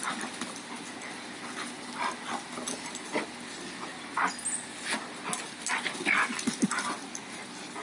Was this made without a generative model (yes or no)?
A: yes